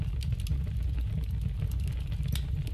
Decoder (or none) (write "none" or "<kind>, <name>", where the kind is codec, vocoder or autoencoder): none